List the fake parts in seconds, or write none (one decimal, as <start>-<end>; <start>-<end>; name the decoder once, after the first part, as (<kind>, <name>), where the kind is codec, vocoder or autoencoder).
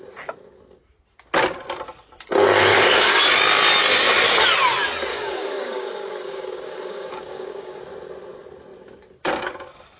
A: 2.7-3.2 (codec, DAC); 5.1-7.8